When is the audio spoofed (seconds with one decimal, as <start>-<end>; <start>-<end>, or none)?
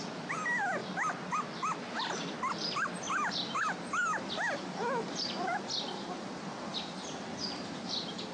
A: none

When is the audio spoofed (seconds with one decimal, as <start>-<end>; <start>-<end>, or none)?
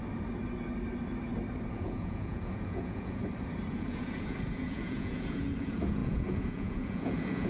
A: 1.7-3.2; 3.7-7.5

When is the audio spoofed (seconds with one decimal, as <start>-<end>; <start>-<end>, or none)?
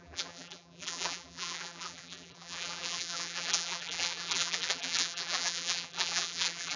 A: 0.0-6.8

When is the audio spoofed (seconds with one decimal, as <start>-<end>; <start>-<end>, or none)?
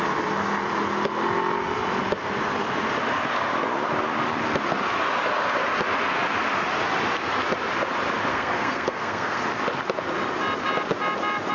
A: 8.3-9.4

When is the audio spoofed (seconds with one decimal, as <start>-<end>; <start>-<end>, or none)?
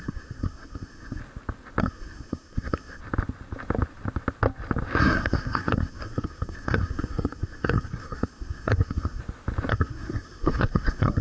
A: 0.0-1.2; 1.8-3.0; 5.0-9.2; 9.7-11.2